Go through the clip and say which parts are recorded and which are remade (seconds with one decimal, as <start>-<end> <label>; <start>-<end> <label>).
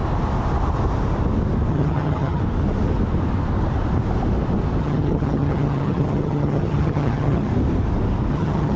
0.0-1.7 recorded; 1.7-2.4 remade; 2.4-4.8 recorded; 4.8-7.5 remade; 7.5-8.3 recorded; 8.3-8.8 remade